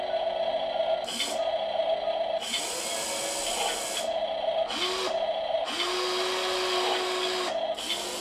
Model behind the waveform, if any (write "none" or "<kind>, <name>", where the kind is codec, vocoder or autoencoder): none